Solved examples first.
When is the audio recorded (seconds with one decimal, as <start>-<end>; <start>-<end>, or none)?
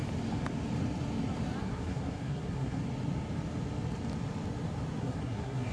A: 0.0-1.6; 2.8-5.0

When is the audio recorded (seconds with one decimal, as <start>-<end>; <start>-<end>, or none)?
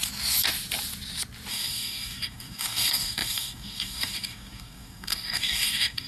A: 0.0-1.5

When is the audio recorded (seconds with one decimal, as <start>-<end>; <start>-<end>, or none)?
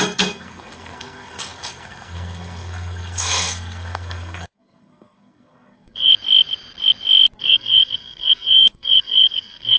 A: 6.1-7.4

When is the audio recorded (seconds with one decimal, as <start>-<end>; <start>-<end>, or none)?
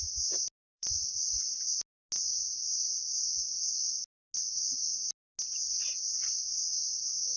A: 0.0-0.6; 1.2-2.4; 3.0-7.4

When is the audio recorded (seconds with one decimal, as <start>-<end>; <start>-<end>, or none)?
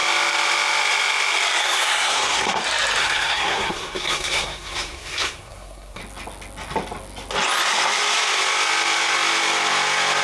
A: 0.0-1.6; 2.6-3.0; 6.0-10.2